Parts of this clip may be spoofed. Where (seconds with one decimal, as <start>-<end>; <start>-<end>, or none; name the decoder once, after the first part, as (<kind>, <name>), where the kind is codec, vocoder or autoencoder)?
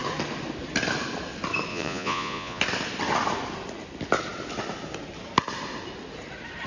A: 1.7-2.6 (vocoder, Vocos)